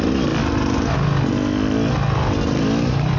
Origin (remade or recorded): recorded